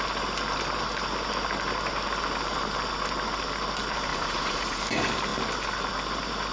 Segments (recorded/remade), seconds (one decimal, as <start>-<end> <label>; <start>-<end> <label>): 0.0-4.1 recorded; 4.1-4.8 remade; 4.8-6.5 recorded